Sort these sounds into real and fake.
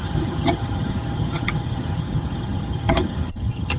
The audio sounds fake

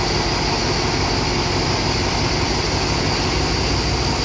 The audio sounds real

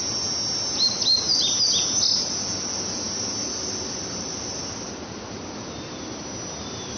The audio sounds real